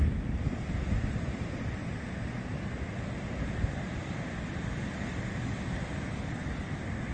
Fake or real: fake